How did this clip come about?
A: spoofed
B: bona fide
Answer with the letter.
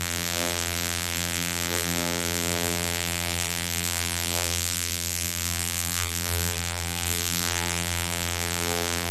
A